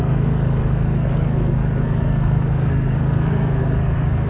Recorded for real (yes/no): no